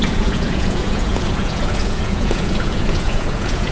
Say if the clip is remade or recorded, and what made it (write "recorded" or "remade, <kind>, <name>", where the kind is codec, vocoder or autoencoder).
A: remade, vocoder, Vocos